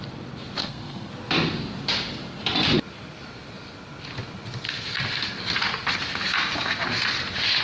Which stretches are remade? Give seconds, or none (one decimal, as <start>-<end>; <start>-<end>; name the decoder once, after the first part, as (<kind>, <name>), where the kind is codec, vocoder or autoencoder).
0.6-1.1 (codec, SNAC)